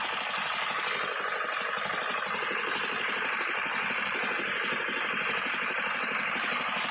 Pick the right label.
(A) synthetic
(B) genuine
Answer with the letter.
B